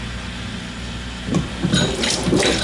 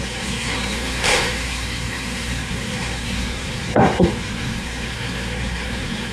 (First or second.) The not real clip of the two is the second